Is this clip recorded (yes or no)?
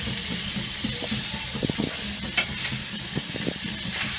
yes